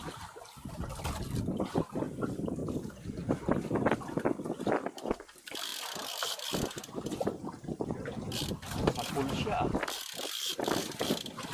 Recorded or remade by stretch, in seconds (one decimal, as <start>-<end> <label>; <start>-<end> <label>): 0.0-2.6 remade; 2.6-3.6 recorded; 3.6-5.7 remade; 5.7-10.0 recorded; 10.0-11.5 remade